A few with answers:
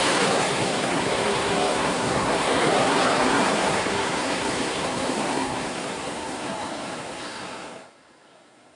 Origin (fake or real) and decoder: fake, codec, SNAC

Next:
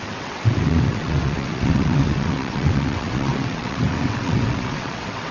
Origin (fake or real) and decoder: fake, vocoder, WaveNeXt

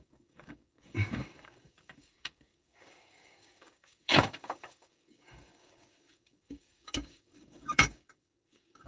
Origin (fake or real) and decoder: fake, codec, DAC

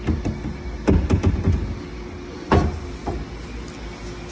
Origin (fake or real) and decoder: real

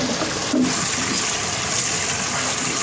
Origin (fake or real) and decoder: real